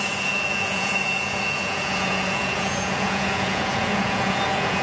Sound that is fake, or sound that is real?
fake